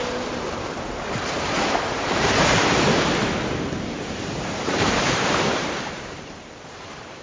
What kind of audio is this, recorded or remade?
remade